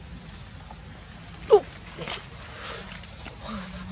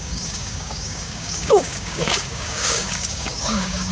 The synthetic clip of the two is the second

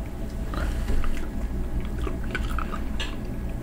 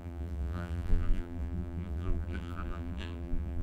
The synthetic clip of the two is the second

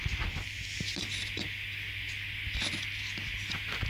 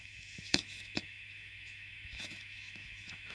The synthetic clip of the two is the second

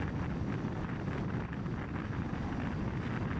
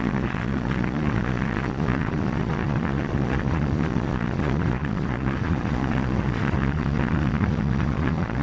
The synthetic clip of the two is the second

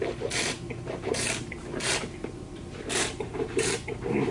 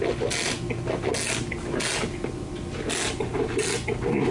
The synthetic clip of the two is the first